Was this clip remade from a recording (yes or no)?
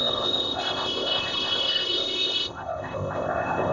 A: yes